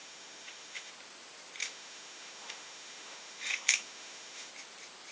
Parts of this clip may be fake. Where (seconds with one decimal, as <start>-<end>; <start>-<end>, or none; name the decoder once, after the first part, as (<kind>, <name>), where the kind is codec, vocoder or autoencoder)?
0.0-0.9 (autoencoder, DAC-VAE); 1.6-4.5